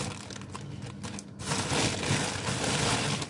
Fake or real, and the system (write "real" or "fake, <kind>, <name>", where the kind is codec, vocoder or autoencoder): real